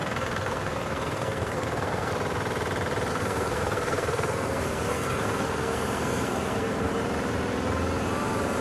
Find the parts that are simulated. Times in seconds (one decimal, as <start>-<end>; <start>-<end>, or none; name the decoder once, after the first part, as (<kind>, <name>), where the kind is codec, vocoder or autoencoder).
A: 0.0-2.1 (codec, SNAC); 3.1-6.9

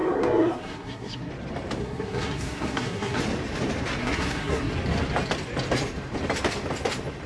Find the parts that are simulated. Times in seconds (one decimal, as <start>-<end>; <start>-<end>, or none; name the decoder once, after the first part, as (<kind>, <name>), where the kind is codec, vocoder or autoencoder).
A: 0.0-1.3 (codec, SNAC); 1.8-3.2; 4.0-4.7

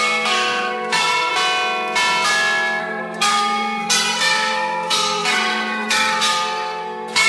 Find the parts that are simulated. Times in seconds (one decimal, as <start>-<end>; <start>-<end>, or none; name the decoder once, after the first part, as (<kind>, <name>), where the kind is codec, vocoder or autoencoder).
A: 0.0-1.3 (codec, SNAC); 2.8-7.3